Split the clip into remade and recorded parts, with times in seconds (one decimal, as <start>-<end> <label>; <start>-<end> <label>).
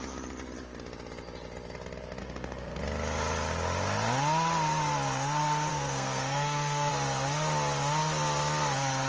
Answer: 0.0-2.2 recorded; 2.2-2.8 remade; 2.8-5.7 recorded; 5.7-6.9 remade; 6.9-9.1 recorded